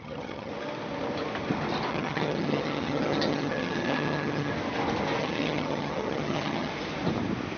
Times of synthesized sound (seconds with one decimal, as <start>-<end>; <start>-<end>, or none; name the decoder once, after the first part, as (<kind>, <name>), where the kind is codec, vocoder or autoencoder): 0.0-0.5 (vocoder, HiFi-GAN); 1.9-4.5; 5.2-6.7